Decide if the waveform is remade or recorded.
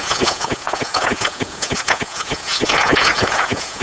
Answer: remade